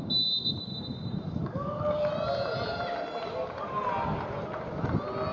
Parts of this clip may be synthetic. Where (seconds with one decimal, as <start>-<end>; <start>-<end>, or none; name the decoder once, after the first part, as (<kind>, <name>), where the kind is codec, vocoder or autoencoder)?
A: 1.4-2.1 (codec, DAC)